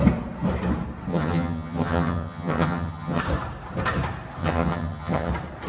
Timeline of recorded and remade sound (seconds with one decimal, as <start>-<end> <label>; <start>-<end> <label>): 0.0-1.1 recorded; 1.1-3.2 remade; 3.2-4.4 recorded; 4.4-5.3 remade; 5.3-5.7 recorded

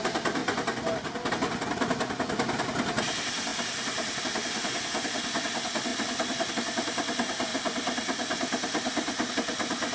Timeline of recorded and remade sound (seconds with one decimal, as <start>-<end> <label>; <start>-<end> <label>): 0.0-3.5 recorded; 3.5-4.2 remade; 4.2-5.9 recorded; 5.9-6.5 remade; 6.5-7.5 recorded; 7.5-9.3 remade; 9.3-9.9 recorded

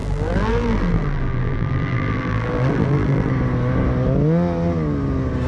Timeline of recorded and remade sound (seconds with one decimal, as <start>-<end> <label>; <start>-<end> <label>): 0.0-3.3 remade; 3.3-5.5 recorded

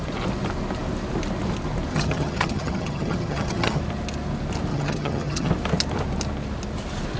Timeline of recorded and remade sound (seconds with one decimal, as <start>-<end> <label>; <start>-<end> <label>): 0.0-1.9 recorded; 1.9-3.8 remade; 3.8-4.7 recorded; 4.7-5.5 remade; 5.5-7.2 recorded

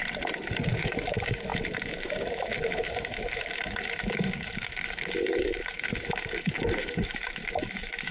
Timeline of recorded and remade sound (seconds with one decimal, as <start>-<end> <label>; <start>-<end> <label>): 0.0-0.7 recorded; 0.7-8.1 remade

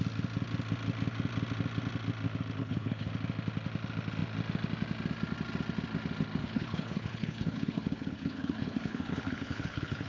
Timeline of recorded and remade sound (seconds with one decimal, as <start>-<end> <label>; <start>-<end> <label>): 0.0-2.6 recorded; 2.6-3.1 remade; 3.1-6.4 recorded; 6.4-10.1 remade

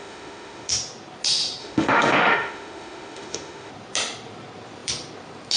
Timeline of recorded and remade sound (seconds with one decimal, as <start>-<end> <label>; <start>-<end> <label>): 0.0-0.7 remade; 0.7-1.6 recorded; 1.6-3.7 remade; 3.7-5.6 recorded

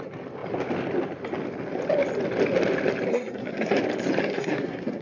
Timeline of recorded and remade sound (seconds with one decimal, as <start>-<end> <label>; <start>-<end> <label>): 0.0-3.1 recorded; 3.1-3.8 remade; 3.8-4.2 recorded; 4.2-5.0 remade